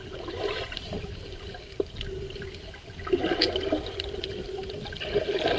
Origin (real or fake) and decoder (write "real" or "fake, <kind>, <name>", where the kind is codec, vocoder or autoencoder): real